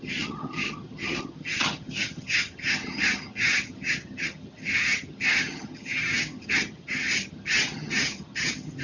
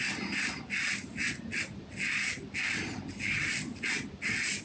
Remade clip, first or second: first